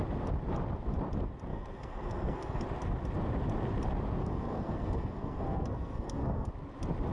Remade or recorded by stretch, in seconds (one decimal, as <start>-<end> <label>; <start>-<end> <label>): 0.0-1.5 recorded; 1.5-2.6 remade; 2.6-4.2 recorded; 4.2-6.5 remade; 6.5-7.1 recorded